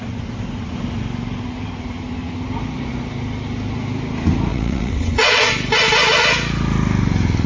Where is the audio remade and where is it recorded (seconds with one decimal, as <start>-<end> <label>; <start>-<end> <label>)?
0.0-4.5 recorded; 4.5-5.5 remade; 5.5-7.5 recorded